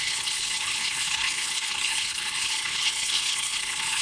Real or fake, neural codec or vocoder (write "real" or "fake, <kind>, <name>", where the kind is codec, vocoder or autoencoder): fake, codec, HILCodec